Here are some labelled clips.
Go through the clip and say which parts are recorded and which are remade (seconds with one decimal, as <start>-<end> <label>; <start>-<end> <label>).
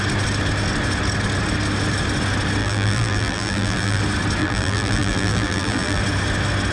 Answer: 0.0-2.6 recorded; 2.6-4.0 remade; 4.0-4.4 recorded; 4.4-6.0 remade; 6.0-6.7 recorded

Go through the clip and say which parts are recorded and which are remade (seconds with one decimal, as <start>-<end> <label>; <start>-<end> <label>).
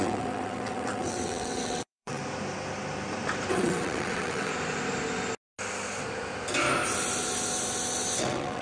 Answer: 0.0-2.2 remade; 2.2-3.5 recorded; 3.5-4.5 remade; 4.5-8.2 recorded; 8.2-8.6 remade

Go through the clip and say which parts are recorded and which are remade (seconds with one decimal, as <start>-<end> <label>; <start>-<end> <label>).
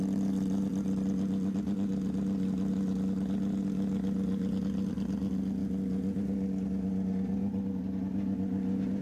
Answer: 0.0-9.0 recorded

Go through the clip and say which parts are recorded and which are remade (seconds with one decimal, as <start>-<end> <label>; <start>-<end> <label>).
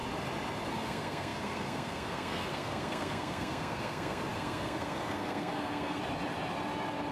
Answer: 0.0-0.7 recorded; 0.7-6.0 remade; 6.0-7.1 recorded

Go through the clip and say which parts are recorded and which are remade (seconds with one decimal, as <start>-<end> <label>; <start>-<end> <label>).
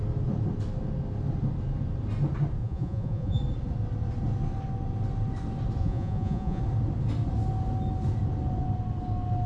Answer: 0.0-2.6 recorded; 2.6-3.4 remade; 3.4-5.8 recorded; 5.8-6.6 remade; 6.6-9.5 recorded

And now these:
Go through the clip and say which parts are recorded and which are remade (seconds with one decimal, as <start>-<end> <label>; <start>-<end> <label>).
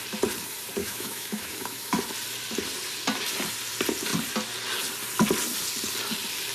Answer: 0.0-0.8 recorded; 0.8-2.0 remade; 2.0-6.5 recorded